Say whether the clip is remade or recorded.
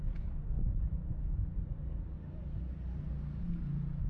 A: recorded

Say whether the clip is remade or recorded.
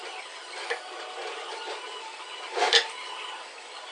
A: recorded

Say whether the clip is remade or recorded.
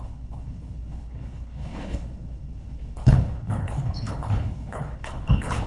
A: remade